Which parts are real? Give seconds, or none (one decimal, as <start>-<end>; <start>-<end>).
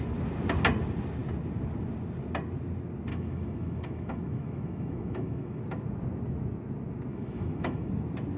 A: 0.0-3.1; 5.6-7.1; 7.9-8.4